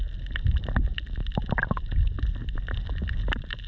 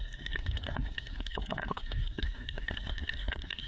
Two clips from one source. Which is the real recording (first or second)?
first